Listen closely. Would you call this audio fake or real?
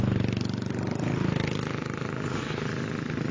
real